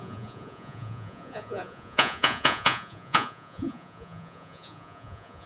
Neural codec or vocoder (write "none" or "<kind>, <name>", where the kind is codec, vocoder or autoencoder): vocoder, Vocos